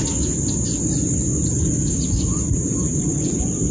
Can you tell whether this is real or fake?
real